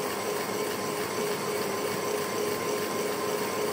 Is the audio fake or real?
real